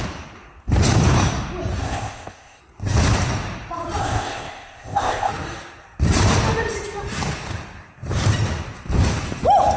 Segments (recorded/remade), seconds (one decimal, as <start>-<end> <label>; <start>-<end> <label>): 0.0-1.8 recorded; 1.8-2.6 remade; 2.6-4.0 recorded; 4.0-5.3 remade; 5.3-9.8 recorded

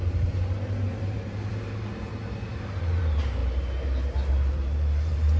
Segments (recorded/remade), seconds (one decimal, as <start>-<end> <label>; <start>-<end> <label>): 0.0-2.1 remade; 2.1-2.8 recorded; 2.8-3.4 remade; 3.4-4.3 recorded; 4.3-5.4 remade

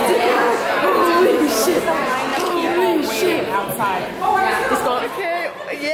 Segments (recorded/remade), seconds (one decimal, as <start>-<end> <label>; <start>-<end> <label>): 0.0-5.9 recorded

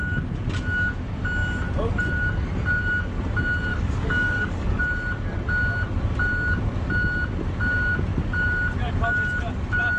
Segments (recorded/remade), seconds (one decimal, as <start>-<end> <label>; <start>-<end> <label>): 0.0-3.7 recorded; 3.7-4.8 remade; 4.8-10.0 recorded